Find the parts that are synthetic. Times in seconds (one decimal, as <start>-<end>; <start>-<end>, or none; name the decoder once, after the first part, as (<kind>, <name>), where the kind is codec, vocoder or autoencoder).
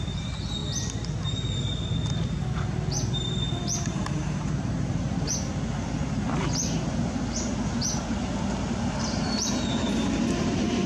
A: 3.6-5.3 (vocoder, BigVGAN v2)